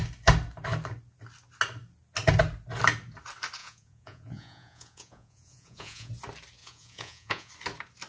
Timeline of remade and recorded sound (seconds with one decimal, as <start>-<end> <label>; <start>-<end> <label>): 0.0-3.6 recorded; 3.6-6.1 remade; 6.1-6.6 recorded; 6.6-7.5 remade; 7.5-8.1 recorded